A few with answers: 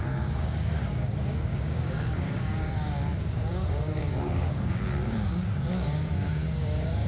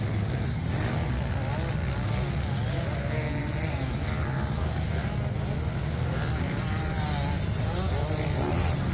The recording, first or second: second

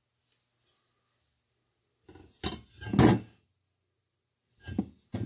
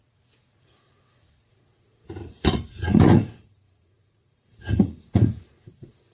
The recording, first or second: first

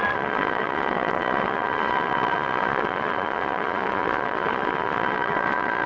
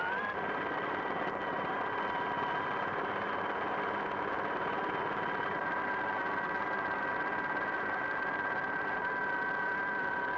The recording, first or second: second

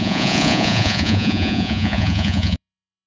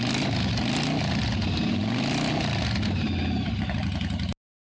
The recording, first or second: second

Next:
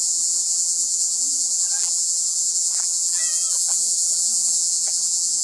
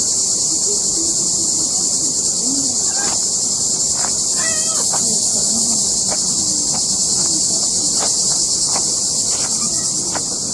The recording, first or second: second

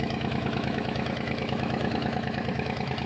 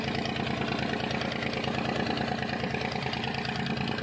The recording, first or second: second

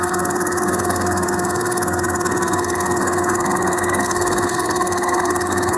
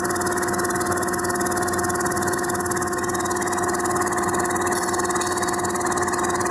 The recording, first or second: second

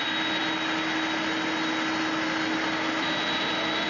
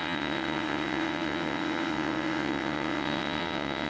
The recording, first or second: first